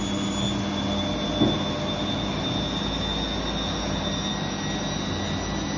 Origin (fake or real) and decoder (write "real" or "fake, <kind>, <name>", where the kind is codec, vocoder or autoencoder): real